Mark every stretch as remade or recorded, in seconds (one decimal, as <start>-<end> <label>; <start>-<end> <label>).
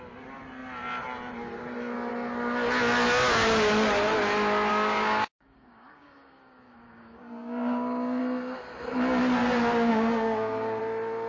0.0-4.7 recorded; 4.7-8.2 remade; 8.2-9.9 recorded; 9.9-10.8 remade; 10.8-11.3 recorded